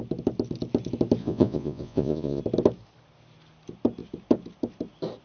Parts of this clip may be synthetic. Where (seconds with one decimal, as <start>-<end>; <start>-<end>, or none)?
1.2-2.4